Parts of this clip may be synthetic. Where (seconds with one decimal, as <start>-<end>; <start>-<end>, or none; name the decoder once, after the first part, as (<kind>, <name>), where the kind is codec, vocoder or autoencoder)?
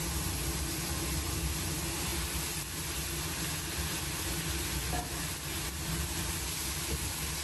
none